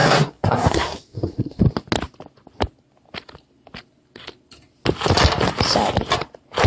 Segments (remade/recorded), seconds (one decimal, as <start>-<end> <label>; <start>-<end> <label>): 0.0-1.6 remade; 1.6-6.7 recorded